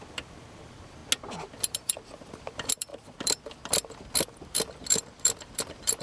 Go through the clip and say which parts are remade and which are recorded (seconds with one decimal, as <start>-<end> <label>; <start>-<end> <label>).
0.0-1.0 remade; 1.0-1.6 recorded; 1.6-6.0 remade